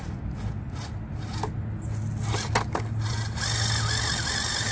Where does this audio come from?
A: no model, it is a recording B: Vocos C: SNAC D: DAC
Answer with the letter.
A